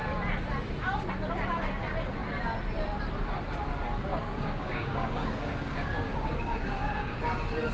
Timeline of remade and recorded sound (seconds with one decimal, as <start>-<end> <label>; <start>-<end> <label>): 0.0-4.1 recorded; 4.1-7.2 remade; 7.2-7.7 recorded